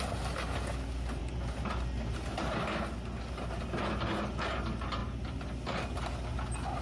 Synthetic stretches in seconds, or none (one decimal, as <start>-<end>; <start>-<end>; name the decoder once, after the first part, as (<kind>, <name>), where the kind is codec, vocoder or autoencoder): none